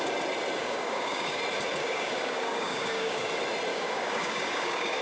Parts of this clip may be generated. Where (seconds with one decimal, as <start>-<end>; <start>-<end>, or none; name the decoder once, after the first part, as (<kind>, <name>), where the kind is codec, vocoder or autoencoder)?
0.6-1.4 (codec, DAC); 1.8-3.3; 3.7-5.0